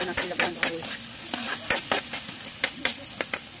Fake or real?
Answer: real